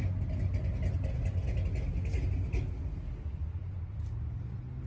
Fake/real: real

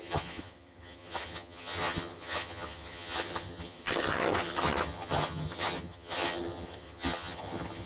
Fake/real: fake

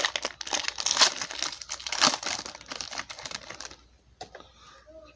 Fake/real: real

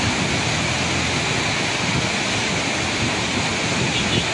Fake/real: real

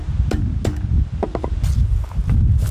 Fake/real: real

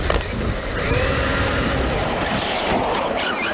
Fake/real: fake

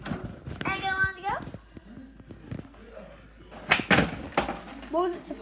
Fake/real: real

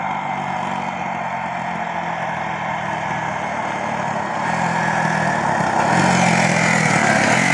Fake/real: real